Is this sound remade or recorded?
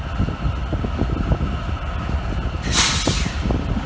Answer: recorded